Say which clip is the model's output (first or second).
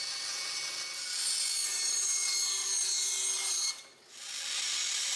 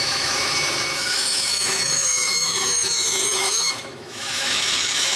second